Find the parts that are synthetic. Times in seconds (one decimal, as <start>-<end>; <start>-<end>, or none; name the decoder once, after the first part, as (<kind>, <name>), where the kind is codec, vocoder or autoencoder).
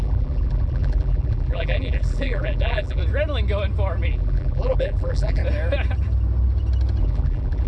0.0-3.0 (vocoder, BigVGAN v2); 4.1-5.4; 7.0-7.7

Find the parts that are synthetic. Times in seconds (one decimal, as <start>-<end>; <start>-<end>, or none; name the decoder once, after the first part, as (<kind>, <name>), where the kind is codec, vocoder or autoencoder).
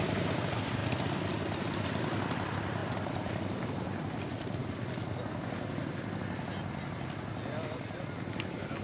0.0-0.8 (vocoder, BigVGAN v2); 1.6-4.6